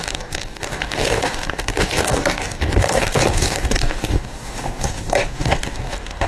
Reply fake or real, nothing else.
fake